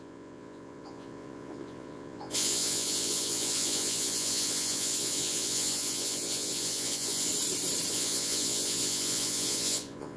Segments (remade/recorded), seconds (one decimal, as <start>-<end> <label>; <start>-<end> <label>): 0.0-7.3 remade; 7.3-7.9 recorded; 7.9-10.2 remade